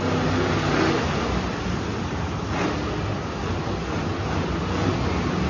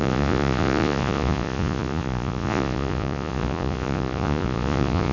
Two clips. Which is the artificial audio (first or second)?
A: second